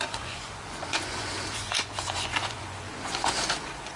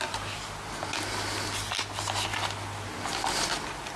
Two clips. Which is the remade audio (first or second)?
first